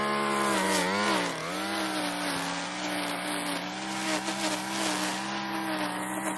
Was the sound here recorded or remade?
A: recorded